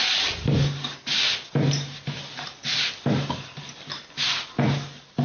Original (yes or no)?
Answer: yes